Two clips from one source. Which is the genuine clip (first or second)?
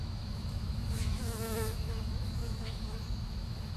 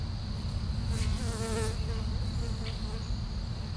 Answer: second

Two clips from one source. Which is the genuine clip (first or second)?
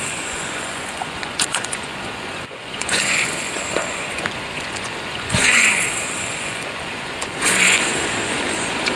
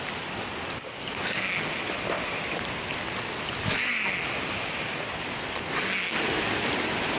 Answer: second